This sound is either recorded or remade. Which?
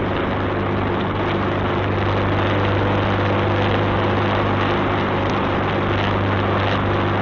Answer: recorded